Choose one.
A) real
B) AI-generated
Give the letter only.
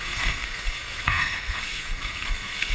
B